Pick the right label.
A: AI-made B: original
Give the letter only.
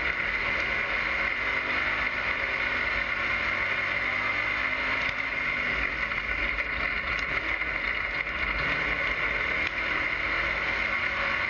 B